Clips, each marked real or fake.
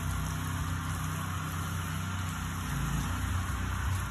real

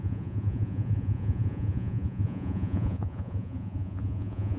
fake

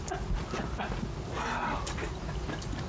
real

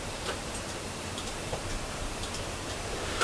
fake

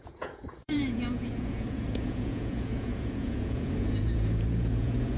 fake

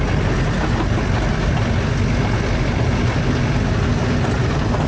real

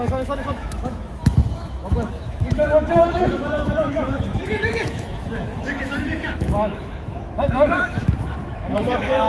fake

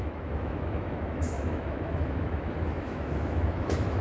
fake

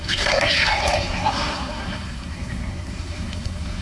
fake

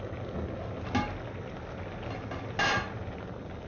real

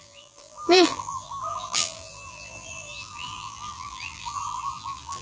fake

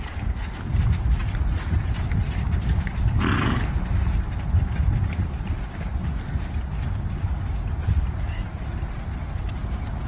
real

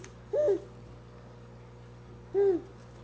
real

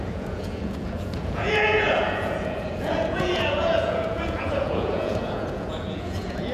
fake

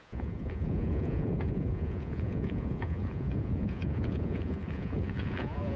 fake